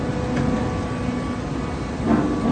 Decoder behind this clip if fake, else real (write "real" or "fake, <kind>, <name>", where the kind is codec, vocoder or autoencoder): real